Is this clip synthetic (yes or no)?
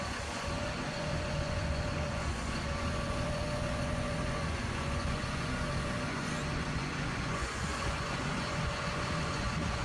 yes